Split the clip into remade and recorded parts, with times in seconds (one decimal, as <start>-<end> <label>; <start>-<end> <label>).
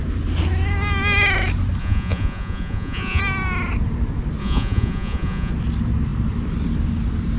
0.0-1.8 recorded; 1.8-3.2 remade; 3.2-4.4 recorded; 4.4-5.5 remade; 5.5-7.4 recorded